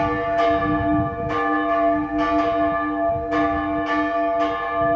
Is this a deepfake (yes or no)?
no